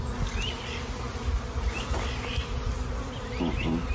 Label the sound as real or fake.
real